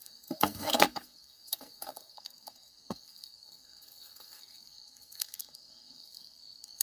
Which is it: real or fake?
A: fake